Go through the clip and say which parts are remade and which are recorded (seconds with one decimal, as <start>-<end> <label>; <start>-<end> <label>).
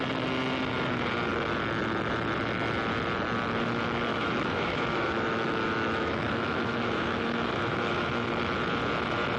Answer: 0.0-4.1 recorded; 4.1-8.1 remade; 8.1-9.4 recorded